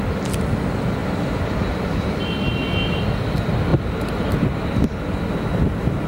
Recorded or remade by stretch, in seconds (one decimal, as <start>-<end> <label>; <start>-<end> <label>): 0.0-6.1 recorded